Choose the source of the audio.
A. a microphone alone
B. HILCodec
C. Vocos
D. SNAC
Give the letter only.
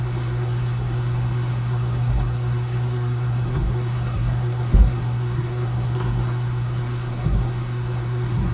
D